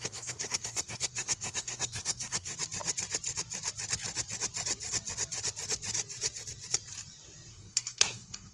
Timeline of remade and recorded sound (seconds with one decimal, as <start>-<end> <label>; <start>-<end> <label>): 0.0-2.5 remade; 2.5-7.5 recorded; 7.5-8.5 remade